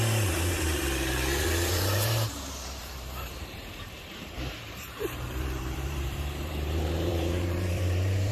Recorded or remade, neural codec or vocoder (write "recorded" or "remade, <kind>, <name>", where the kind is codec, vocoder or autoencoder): remade, vocoder, BigVGAN v2